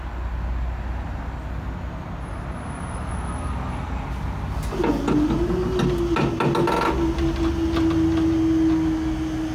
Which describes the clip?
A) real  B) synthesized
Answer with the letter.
A